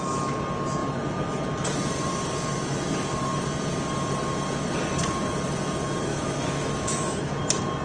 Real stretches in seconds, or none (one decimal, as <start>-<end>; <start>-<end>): 0.0-6.1; 7.3-7.8